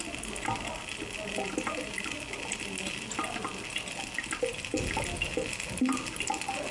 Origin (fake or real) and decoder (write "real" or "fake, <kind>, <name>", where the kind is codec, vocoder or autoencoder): real